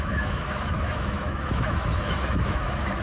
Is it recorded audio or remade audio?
remade